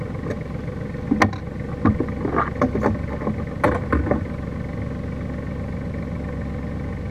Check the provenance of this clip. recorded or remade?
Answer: recorded